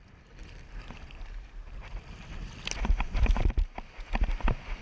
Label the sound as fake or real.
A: real